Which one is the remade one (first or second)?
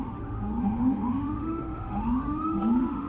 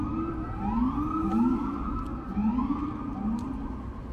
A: first